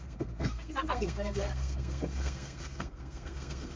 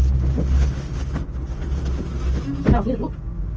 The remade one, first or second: first